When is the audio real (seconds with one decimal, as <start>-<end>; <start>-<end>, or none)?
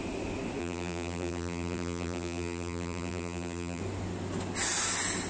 0.0-0.6; 3.8-5.3